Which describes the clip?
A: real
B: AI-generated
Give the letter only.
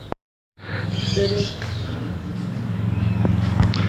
B